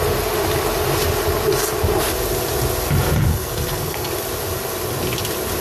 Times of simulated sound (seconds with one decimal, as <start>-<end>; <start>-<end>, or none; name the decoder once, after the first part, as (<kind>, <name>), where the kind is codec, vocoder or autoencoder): 3.3-4.1 (codec, SNAC)